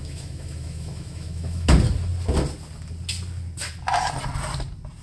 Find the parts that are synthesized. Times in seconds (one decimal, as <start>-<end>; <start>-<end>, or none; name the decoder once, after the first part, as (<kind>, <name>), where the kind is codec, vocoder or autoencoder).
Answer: 0.0-1.7 (autoencoder, DAC-VAE)